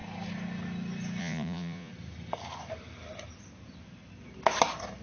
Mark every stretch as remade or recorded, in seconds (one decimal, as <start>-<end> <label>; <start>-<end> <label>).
0.0-1.2 recorded; 1.2-1.9 remade; 1.9-5.0 recorded